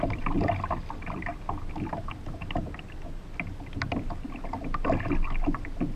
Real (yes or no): yes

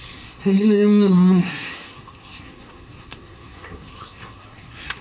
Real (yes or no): no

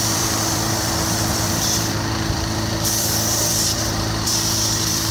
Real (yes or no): no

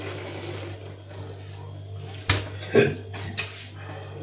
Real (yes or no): yes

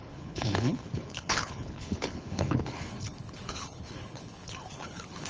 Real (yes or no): no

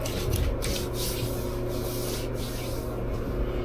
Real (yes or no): yes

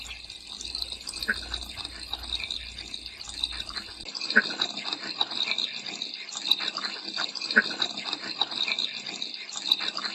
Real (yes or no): yes